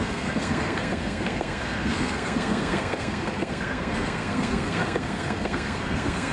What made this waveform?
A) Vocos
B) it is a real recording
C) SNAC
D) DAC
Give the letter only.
C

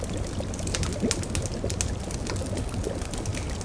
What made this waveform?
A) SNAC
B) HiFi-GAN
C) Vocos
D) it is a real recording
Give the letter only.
D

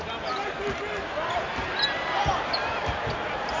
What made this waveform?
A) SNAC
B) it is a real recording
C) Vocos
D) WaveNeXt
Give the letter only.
B